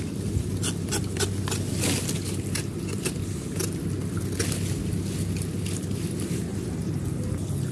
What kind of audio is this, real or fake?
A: real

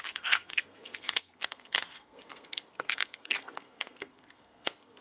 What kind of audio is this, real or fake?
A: fake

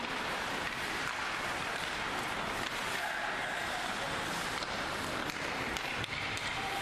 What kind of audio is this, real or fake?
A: fake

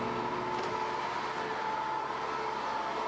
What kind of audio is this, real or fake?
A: real